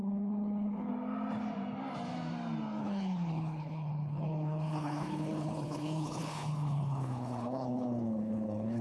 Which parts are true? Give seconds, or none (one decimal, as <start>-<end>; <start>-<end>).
0.9-2.8